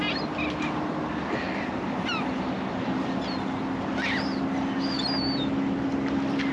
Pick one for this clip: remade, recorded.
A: recorded